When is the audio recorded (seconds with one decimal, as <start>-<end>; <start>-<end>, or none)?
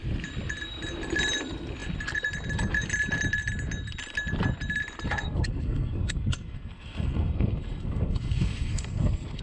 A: 0.0-5.2